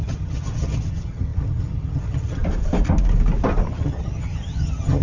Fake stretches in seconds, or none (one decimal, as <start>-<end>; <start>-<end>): 0.0-2.4; 3.7-5.0